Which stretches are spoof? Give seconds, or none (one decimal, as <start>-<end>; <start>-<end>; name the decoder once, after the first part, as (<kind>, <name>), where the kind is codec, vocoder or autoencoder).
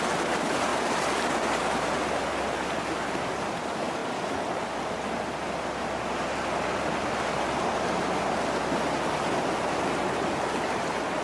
none